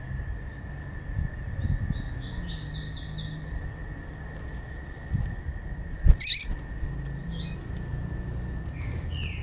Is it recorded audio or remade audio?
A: recorded